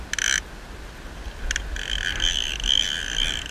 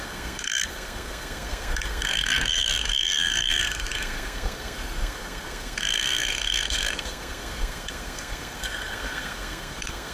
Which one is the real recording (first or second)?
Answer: first